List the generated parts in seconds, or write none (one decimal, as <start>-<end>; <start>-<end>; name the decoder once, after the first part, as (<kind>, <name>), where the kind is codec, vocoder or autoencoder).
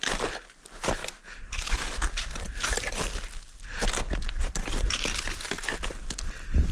none